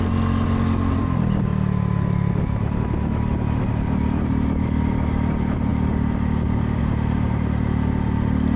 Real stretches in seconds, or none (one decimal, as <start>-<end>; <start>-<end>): 0.0-5.7; 6.8-8.6